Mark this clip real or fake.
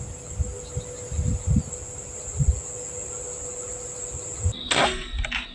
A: real